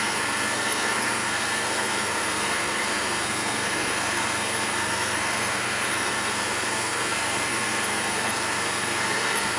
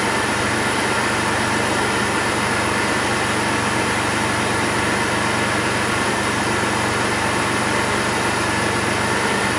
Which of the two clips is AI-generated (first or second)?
first